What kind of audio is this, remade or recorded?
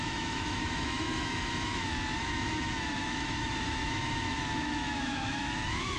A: remade